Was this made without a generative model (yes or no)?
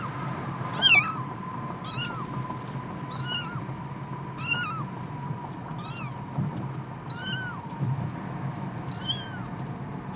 yes